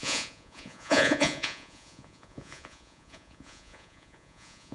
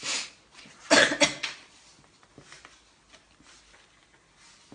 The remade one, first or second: first